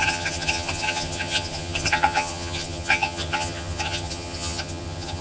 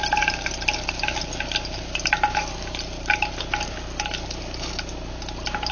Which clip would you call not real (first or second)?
first